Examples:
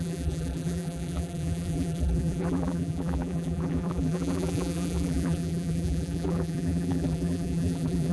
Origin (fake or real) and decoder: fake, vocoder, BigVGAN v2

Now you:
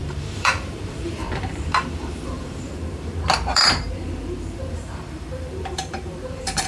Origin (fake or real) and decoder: fake, vocoder, BigVGAN v2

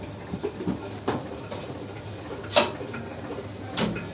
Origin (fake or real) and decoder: real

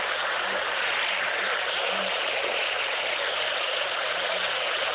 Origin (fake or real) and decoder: real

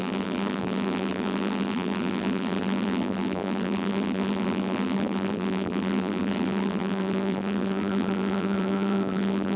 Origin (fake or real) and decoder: fake, vocoder, BigVGAN v2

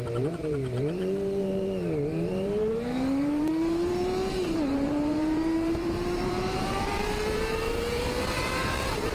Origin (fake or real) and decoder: fake, vocoder, BigVGAN v2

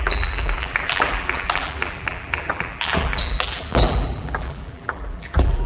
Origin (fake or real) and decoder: fake, vocoder, BigVGAN v2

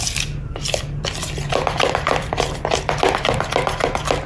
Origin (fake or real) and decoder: fake, vocoder, BigVGAN v2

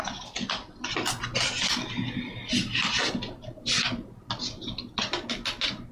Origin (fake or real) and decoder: real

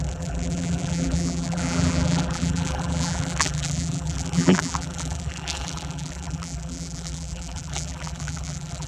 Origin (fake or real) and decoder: fake, vocoder, BigVGAN v2